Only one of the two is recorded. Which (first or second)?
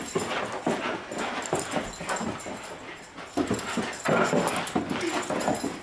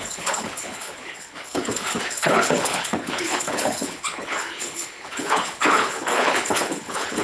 first